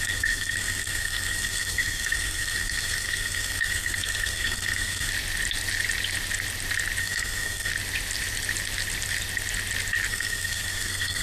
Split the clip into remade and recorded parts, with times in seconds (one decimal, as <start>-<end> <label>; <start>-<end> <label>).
0.0-5.1 remade; 5.1-7.0 recorded; 7.0-7.7 remade; 7.7-10.1 recorded; 10.1-11.2 remade